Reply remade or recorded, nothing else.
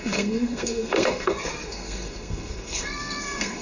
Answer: remade